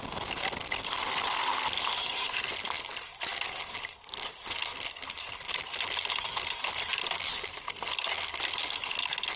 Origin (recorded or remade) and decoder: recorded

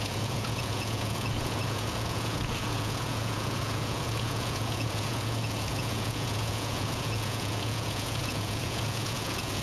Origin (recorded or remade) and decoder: remade, vocoder, Vocos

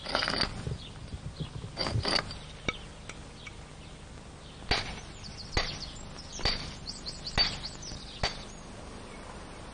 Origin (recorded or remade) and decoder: recorded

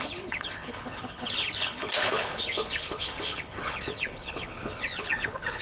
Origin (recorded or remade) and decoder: remade, codec, HILCodec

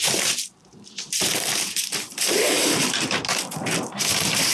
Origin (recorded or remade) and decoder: remade, vocoder, BigVGAN v2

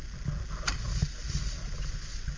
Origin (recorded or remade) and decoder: recorded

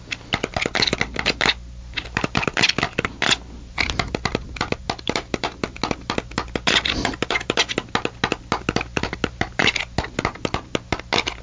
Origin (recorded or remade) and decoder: recorded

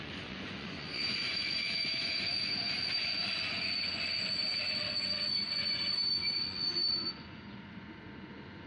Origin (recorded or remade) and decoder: remade, vocoder, Vocos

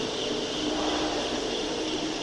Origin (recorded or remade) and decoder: remade, vocoder, BigVGAN v2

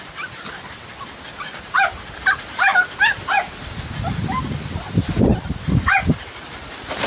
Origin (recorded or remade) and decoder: recorded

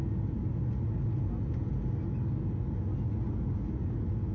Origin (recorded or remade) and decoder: recorded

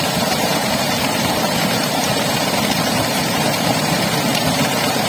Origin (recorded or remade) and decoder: remade, vocoder, BigVGAN v2